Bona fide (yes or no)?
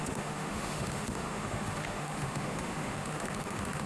no